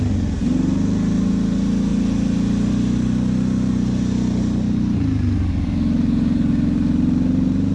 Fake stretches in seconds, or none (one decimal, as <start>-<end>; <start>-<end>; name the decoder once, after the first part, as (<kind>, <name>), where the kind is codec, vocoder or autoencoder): none